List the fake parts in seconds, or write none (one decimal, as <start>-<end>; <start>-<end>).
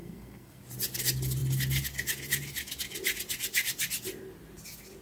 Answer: 0.0-0.6